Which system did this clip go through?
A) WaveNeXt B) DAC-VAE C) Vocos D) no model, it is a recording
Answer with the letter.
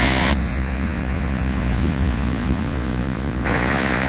C